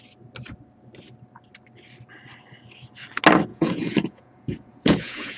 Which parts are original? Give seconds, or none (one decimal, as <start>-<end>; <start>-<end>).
0.0-3.5